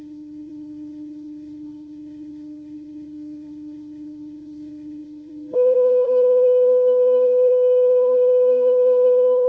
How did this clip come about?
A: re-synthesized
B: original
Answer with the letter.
A